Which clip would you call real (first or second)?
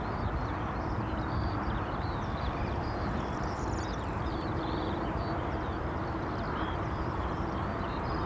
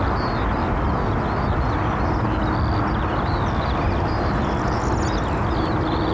second